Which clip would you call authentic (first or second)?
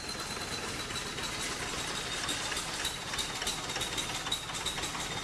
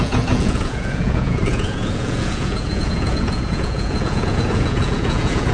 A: first